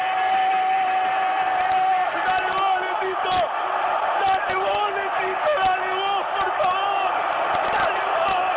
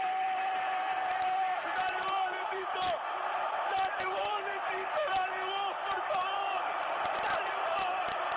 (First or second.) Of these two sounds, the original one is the first